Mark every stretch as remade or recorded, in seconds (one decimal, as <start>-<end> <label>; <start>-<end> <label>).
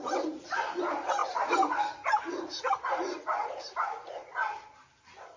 0.0-1.2 remade; 1.2-2.7 recorded; 2.7-4.2 remade; 4.2-5.4 recorded